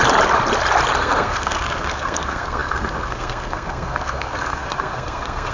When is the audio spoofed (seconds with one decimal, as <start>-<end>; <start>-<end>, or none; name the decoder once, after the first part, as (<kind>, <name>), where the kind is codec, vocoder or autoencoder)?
1.0-5.5 (codec, SNAC)